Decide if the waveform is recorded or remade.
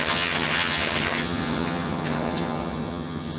remade